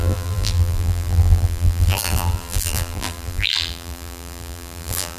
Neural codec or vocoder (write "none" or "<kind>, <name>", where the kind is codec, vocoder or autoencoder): vocoder, BigVGAN v2